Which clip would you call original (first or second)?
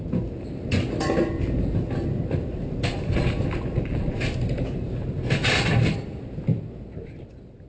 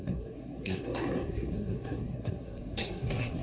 first